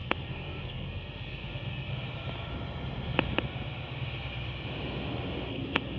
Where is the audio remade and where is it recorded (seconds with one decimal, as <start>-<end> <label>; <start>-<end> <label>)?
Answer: 0.0-1.9 remade; 1.9-5.5 recorded; 5.5-6.0 remade

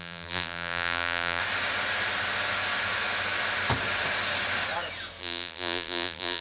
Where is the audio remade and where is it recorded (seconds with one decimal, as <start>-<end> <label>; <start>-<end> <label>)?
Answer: 0.0-1.4 remade; 1.4-5.2 recorded; 5.2-6.4 remade

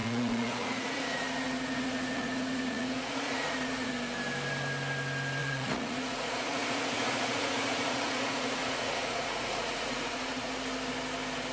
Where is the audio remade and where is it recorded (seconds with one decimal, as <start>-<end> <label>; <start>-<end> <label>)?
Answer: 0.0-3.9 remade; 3.9-5.4 recorded; 5.4-10.5 remade; 10.5-11.5 recorded

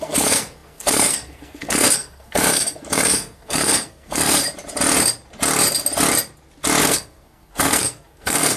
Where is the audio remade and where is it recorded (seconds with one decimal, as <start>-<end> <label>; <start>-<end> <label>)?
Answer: 0.0-4.4 remade; 4.4-6.8 recorded; 6.8-8.6 remade

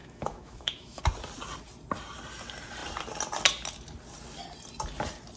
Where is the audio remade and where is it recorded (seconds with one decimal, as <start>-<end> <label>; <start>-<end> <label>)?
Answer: 0.0-1.0 remade; 1.0-5.4 recorded